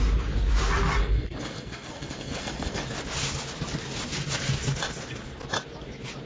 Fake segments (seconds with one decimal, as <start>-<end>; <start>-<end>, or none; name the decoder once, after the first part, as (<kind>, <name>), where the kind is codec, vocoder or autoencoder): 1.0-2.8 (codec, SNAC)